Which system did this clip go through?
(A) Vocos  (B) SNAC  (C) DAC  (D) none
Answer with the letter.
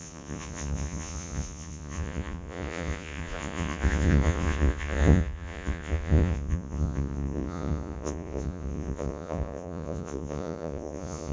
A